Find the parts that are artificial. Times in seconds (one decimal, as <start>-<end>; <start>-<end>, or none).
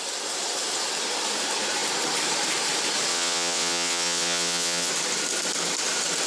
3.1-4.9